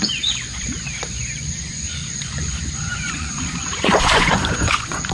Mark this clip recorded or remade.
remade